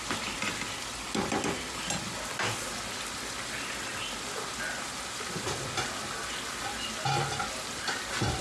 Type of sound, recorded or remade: recorded